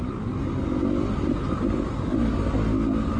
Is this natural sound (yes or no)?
yes